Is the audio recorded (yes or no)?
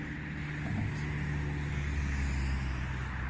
yes